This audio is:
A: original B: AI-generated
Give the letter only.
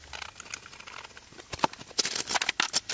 A